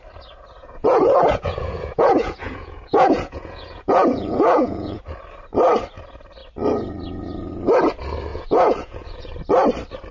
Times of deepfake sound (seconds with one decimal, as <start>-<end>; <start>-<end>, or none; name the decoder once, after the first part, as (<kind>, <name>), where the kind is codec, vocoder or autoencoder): 0.6-5.0 (vocoder, Vocos); 8.3-9.3